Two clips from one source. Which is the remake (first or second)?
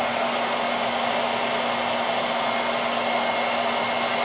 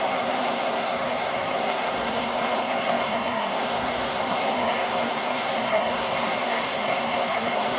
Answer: second